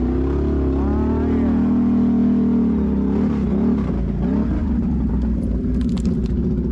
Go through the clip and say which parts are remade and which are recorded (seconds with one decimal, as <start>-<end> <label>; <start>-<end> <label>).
0.0-6.7 recorded